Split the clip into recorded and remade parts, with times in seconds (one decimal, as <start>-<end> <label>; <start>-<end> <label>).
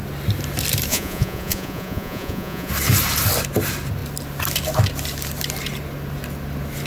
0.0-0.9 recorded; 0.9-2.7 remade; 2.7-6.9 recorded